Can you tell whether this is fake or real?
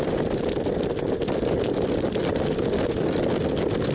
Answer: real